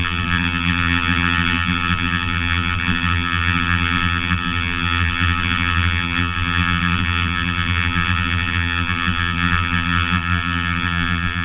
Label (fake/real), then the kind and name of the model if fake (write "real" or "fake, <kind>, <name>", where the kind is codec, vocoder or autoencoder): fake, vocoder, BigVGAN v2